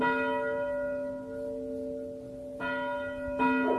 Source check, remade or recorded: recorded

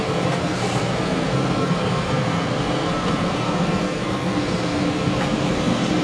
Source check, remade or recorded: remade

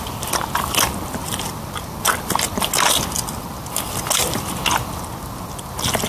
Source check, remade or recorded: recorded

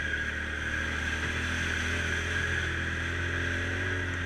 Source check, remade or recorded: recorded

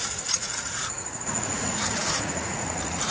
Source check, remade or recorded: remade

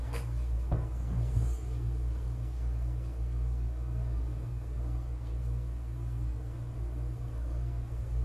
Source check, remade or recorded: remade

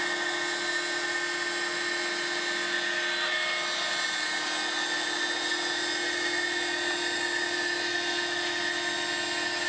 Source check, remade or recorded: recorded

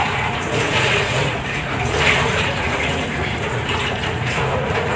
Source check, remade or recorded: remade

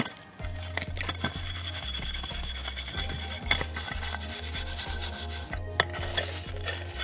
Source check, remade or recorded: recorded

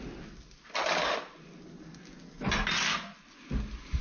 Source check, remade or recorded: recorded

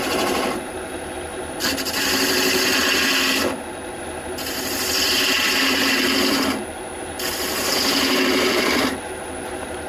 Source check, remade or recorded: remade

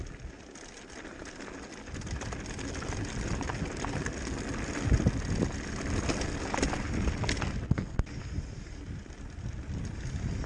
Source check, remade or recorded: recorded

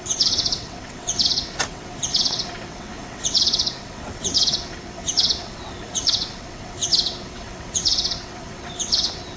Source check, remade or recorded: remade